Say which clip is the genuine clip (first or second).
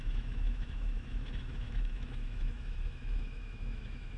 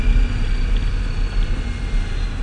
second